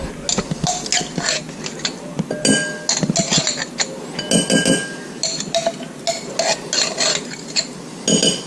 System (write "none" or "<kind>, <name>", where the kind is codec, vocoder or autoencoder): none